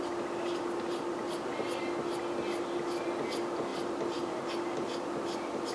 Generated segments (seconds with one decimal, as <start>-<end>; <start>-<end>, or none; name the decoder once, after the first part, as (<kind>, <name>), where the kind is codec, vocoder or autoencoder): none